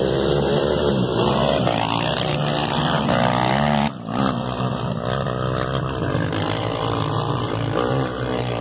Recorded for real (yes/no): yes